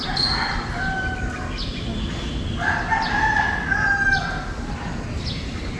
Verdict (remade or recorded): recorded